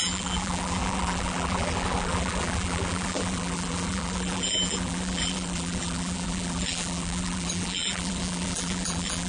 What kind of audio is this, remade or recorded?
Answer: remade